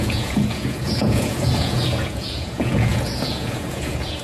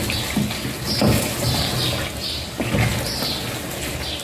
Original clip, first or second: second